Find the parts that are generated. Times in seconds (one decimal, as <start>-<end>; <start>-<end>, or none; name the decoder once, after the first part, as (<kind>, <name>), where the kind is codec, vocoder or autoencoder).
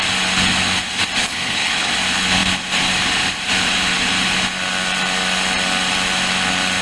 1.2-1.9 (codec, HILCodec)